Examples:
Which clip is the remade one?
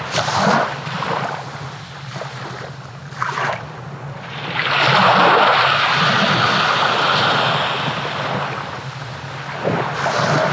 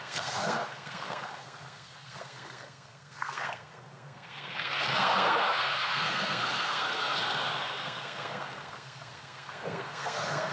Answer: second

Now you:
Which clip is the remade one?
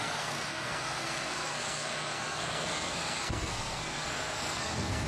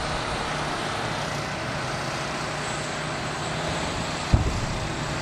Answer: first